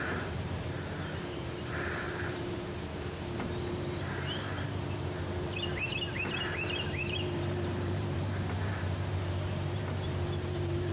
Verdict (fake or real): fake